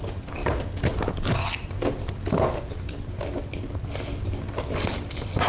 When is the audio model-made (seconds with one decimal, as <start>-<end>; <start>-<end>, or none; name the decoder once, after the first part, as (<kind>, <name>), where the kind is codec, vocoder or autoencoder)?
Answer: none